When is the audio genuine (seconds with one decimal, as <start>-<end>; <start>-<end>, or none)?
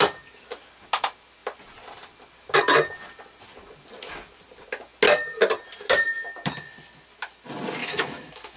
0.0-7.8